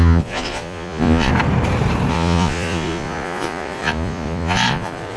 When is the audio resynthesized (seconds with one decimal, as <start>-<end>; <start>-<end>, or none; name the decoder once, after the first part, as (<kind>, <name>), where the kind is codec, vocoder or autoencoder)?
0.0-1.3 (vocoder, Vocos); 2.1-5.2